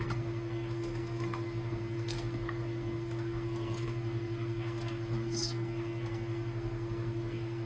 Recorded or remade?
remade